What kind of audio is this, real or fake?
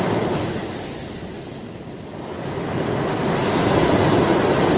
real